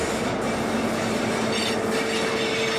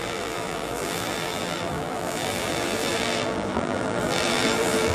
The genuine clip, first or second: first